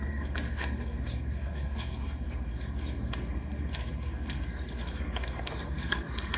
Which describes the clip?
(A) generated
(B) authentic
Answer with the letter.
A